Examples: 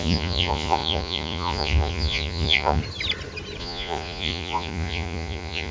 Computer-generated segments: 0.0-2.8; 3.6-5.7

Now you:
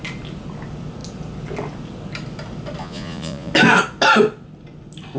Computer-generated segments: 2.8-3.5

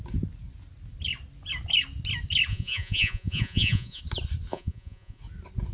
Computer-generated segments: 2.5-4.0; 4.5-5.2

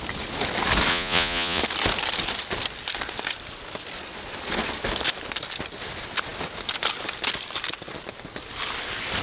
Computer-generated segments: 0.9-1.6

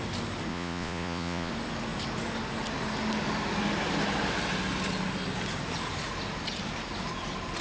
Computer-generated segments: 0.5-1.5

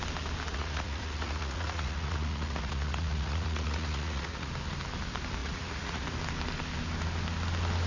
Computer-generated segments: 0.5-4.5; 5.4-6.0

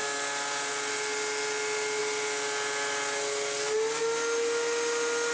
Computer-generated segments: none